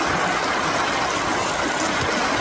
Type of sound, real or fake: real